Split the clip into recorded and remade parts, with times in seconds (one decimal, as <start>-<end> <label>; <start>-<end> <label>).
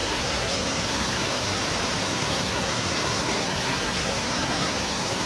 0.0-1.6 remade; 1.6-2.0 recorded; 2.0-5.3 remade